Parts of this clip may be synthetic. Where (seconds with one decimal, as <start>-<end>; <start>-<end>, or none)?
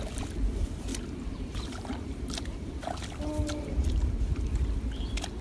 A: 0.9-4.1